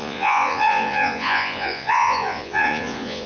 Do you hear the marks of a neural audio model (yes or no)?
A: yes